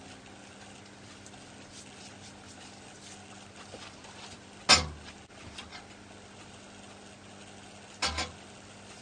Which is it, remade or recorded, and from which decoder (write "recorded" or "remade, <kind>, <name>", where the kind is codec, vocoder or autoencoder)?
recorded